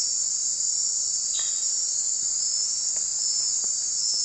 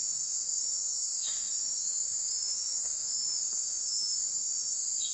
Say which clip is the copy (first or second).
second